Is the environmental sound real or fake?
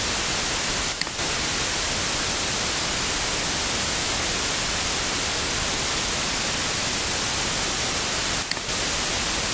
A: real